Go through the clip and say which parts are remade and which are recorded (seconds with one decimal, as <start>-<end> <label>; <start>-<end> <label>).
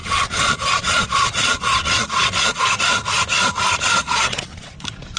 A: 0.0-2.8 remade; 2.8-4.0 recorded; 4.0-4.7 remade; 4.7-5.2 recorded